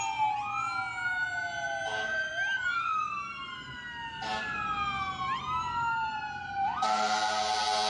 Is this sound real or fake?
real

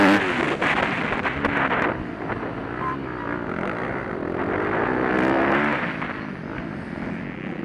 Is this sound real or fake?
real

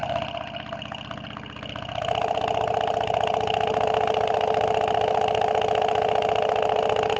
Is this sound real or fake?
real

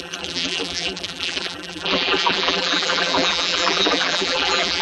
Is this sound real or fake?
fake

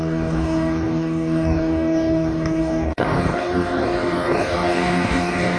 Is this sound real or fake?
fake